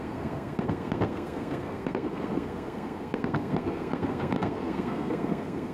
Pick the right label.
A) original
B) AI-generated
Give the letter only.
B